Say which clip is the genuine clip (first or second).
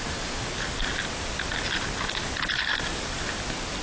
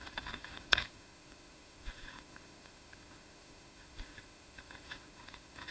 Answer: first